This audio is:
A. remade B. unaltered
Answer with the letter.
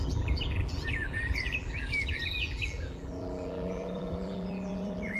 A